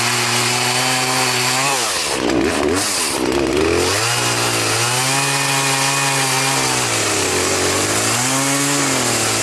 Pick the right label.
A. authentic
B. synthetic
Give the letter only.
A